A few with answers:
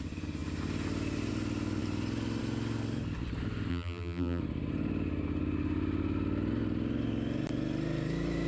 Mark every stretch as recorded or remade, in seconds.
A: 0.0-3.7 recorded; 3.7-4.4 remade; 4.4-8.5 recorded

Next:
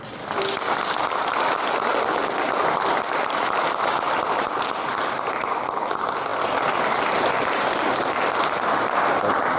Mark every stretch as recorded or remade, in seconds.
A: 0.0-9.6 recorded

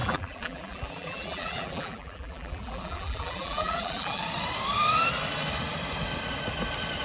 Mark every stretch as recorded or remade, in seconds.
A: 0.0-4.2 remade; 4.2-7.0 recorded

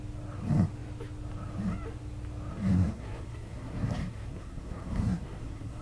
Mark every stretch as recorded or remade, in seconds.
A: 0.0-2.5 recorded; 2.5-5.8 remade